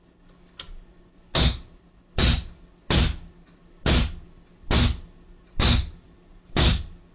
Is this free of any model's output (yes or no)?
yes